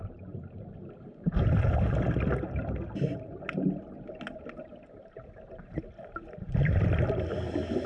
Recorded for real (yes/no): yes